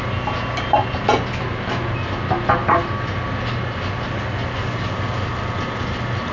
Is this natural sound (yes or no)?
yes